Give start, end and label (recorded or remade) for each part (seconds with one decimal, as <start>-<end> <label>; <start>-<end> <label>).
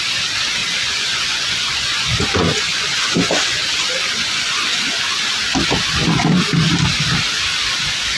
0.0-0.6 recorded; 0.6-5.1 remade; 5.1-8.2 recorded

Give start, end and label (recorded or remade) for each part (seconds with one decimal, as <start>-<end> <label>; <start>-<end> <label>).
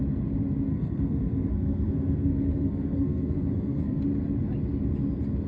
0.0-0.7 recorded; 0.7-4.0 remade; 4.0-5.5 recorded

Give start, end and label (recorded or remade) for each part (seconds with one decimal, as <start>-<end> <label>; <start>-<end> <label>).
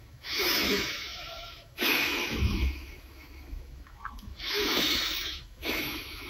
0.0-6.3 remade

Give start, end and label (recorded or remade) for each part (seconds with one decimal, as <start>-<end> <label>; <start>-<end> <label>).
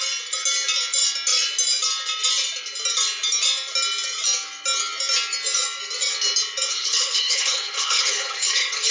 0.0-6.7 recorded; 6.7-8.9 remade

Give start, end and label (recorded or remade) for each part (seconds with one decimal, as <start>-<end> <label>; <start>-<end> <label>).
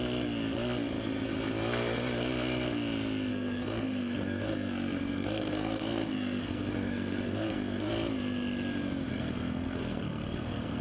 0.0-3.3 recorded; 3.3-7.9 remade; 7.9-9.1 recorded; 9.1-10.8 remade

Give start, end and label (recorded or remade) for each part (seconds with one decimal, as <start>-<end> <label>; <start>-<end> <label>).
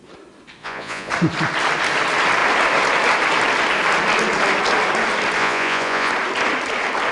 0.0-0.6 recorded; 0.6-1.1 remade; 1.1-5.4 recorded; 5.4-6.1 remade; 6.1-7.1 recorded